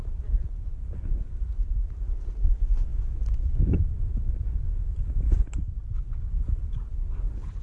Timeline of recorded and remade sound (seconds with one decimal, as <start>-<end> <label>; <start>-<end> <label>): 0.0-7.6 recorded